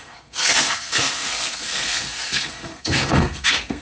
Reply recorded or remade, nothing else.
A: remade